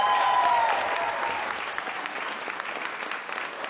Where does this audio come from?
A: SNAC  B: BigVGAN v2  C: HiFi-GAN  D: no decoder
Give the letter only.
D